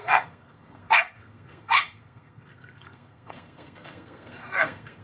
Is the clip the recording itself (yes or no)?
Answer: no